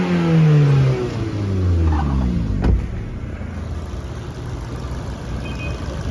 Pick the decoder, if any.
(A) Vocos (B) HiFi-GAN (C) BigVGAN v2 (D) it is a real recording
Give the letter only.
D